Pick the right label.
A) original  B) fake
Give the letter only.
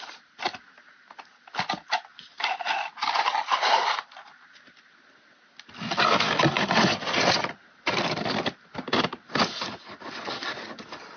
A